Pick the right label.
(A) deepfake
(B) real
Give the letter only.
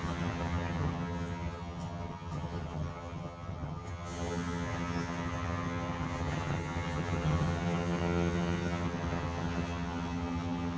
A